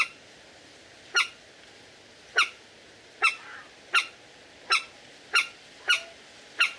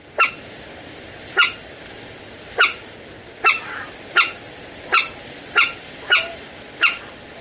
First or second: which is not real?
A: second